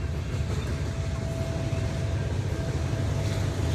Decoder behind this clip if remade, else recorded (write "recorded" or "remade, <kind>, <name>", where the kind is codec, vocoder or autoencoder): recorded